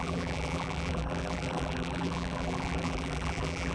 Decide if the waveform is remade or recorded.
remade